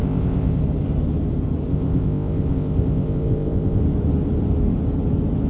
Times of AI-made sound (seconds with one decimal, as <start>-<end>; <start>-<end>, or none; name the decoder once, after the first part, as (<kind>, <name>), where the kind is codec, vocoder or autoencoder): 0.0-0.6 (codec, ZipCodec); 1.7-3.8